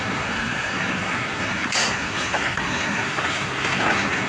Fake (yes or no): yes